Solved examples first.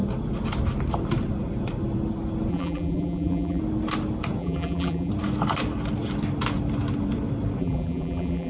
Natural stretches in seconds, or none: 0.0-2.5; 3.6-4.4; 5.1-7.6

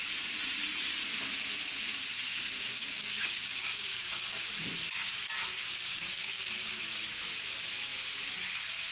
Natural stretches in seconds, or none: 0.0-2.7; 4.5-5.6; 6.8-8.9

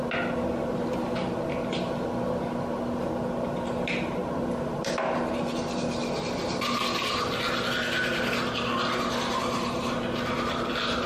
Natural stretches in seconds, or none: 0.0-11.1

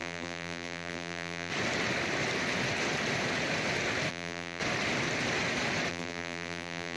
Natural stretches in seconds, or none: 1.5-4.1; 4.6-5.9

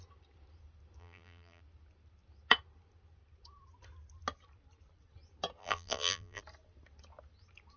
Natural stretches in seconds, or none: 0.0-1.0; 1.6-5.6; 6.4-7.8

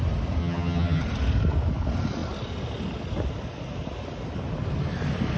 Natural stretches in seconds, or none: 0.0-0.4; 1.0-5.4